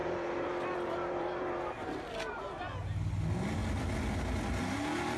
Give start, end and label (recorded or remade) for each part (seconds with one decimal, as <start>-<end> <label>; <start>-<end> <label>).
0.0-3.1 remade; 3.1-5.2 recorded